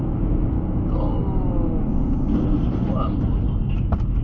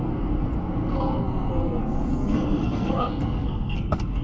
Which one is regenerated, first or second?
second